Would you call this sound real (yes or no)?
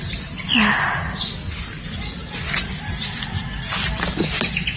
yes